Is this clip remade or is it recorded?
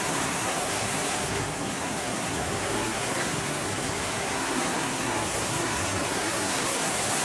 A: remade